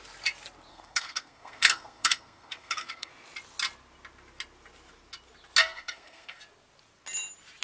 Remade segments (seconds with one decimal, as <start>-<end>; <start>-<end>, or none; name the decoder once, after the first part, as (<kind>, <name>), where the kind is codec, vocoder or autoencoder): 0.7-3.1 (codec, SNAC); 5.6-6.4